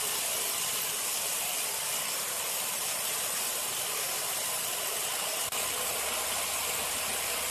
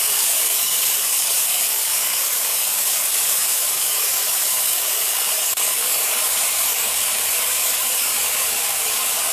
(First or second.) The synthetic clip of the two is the second